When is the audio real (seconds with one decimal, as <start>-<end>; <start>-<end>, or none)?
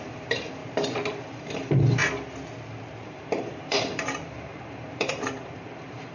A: 0.6-1.1; 2.0-3.0